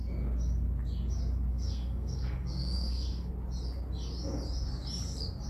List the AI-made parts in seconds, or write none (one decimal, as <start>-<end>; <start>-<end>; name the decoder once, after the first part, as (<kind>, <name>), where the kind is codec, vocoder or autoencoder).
1.5-3.3 (codec, SNAC)